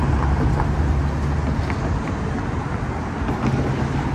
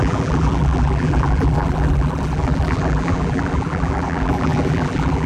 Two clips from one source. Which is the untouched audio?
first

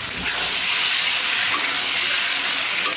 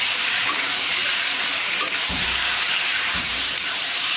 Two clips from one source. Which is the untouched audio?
first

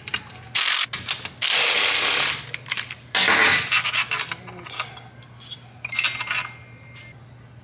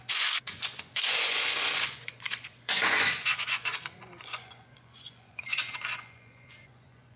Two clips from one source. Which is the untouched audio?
first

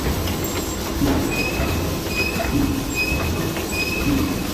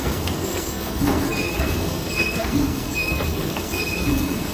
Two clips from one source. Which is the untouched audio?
first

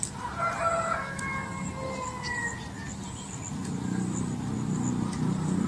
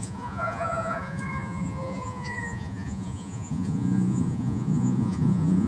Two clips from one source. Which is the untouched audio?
first